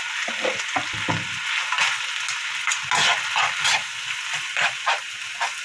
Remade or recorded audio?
recorded